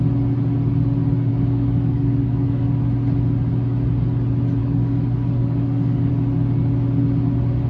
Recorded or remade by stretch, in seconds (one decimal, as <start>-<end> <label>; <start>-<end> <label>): 0.0-1.3 recorded; 1.3-2.7 remade; 2.7-4.6 recorded; 4.6-6.1 remade; 6.1-7.7 recorded